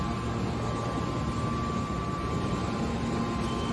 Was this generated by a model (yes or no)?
no